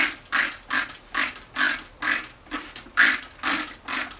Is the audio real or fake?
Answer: real